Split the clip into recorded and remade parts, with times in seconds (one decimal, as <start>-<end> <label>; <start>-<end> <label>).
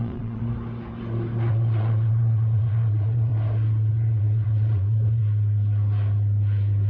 0.0-0.4 remade; 0.4-1.5 recorded; 1.5-3.3 remade; 3.3-3.9 recorded; 3.9-5.2 remade; 5.2-6.9 recorded